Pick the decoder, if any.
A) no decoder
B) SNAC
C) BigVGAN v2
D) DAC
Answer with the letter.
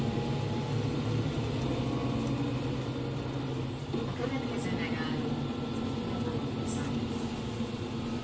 A